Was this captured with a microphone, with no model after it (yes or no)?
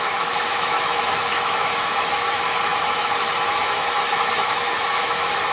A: no